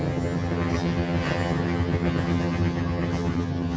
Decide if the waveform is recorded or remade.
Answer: remade